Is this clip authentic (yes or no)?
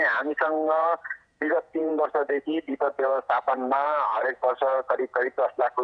no